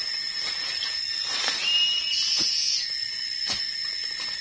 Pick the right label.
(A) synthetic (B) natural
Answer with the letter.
B